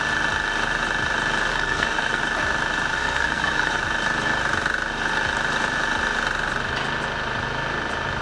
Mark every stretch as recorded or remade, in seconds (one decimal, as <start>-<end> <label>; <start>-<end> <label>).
0.0-1.5 recorded; 1.5-2.2 remade; 2.2-2.9 recorded; 2.9-3.8 remade; 3.8-8.2 recorded